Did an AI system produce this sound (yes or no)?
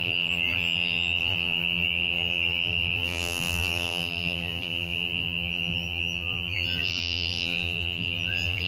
yes